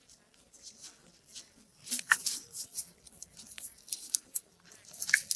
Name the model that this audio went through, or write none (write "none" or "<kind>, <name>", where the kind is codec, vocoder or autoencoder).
none